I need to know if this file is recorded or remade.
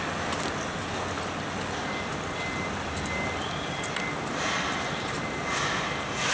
recorded